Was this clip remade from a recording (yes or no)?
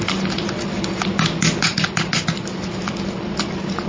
no